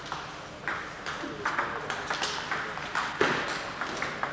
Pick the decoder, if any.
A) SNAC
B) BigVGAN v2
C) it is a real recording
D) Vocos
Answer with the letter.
C